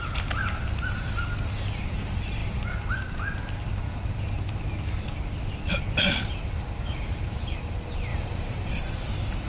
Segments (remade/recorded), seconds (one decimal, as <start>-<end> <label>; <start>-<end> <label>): 0.0-8.1 recorded; 8.1-8.8 remade; 8.8-9.5 recorded